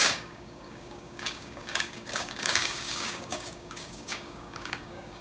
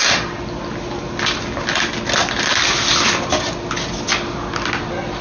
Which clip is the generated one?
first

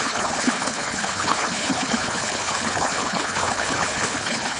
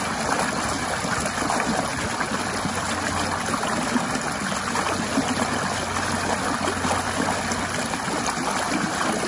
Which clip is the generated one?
first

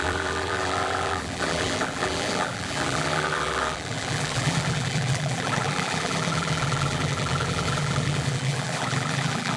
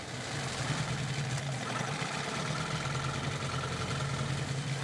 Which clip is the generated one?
first